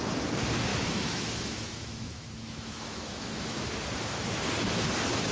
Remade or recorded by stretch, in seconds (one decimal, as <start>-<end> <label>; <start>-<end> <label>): 0.0-0.7 recorded; 0.7-3.6 remade; 3.6-5.3 recorded